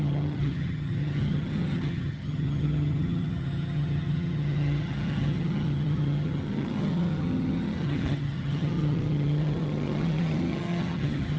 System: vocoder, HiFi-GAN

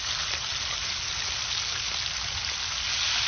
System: none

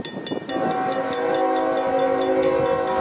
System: none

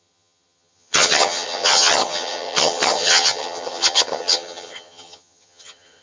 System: vocoder, HiFi-GAN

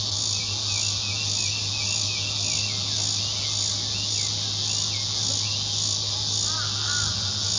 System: none